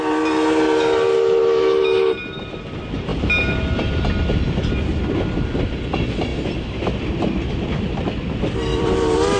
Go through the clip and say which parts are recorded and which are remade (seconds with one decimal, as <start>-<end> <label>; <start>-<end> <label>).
0.0-8.7 recorded; 8.7-9.4 remade